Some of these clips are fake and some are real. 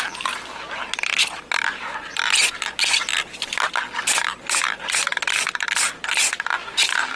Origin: real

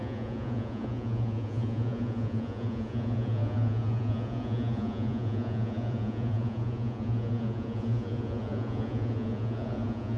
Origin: fake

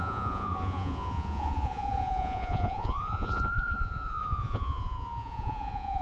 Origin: fake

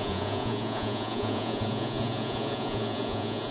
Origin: fake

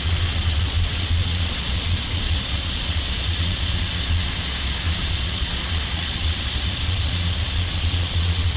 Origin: fake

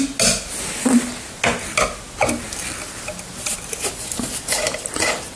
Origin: real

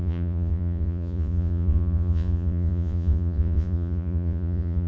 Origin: fake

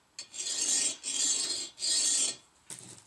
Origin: real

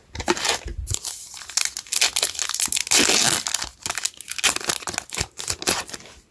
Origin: real